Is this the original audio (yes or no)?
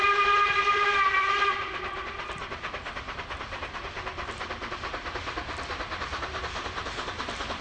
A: no